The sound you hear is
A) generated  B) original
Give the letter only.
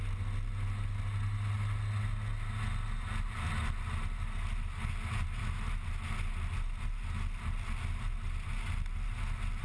B